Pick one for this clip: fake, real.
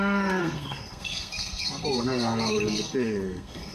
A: fake